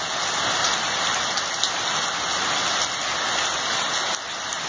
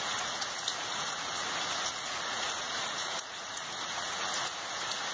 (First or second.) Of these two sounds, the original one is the first